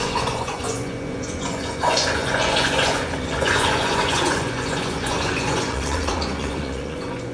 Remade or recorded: remade